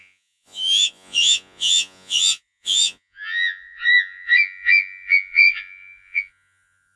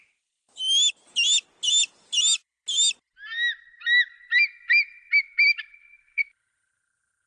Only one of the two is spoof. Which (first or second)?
first